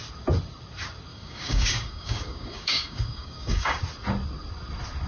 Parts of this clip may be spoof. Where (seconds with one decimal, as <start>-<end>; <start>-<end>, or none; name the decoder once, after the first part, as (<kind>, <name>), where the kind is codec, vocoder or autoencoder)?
1.1-3.8 (codec, DAC)